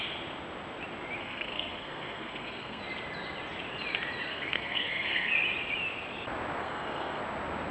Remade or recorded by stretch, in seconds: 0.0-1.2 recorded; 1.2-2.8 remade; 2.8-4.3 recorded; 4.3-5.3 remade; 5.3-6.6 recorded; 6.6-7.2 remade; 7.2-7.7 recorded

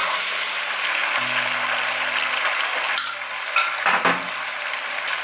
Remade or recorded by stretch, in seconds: 0.0-0.6 remade; 0.6-5.2 recorded

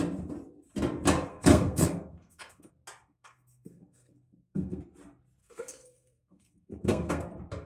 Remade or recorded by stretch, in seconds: 0.0-1.3 recorded; 1.3-2.7 remade; 2.7-3.1 recorded; 3.1-4.8 remade; 4.8-5.4 recorded; 5.4-7.3 remade; 7.3-7.7 recorded

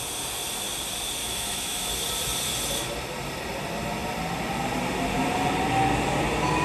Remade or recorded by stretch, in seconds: 0.0-1.2 recorded; 1.2-1.9 remade; 1.9-6.6 recorded

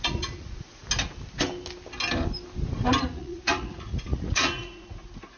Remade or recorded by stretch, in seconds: 0.0-0.8 remade; 0.8-3.0 recorded; 3.0-5.4 remade